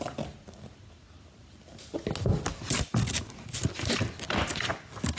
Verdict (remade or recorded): recorded